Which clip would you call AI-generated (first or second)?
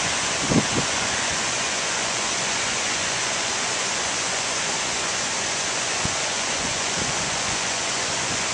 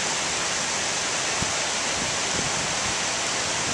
first